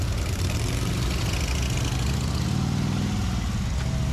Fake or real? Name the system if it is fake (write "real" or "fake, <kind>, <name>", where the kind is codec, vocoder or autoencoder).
real